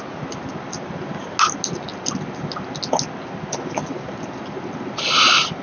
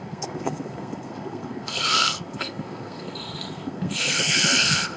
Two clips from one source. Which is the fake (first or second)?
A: second